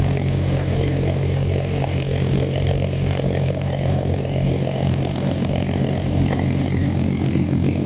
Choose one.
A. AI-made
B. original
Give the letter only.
A